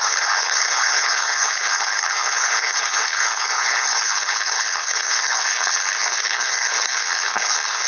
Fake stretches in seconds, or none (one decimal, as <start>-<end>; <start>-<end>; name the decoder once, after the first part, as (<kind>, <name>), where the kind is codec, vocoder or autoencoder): 0.0-7.9 (codec, HILCodec)